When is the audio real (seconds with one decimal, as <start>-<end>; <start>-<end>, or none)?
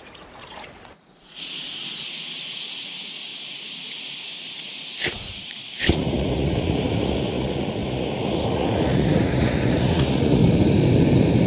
10.4-11.5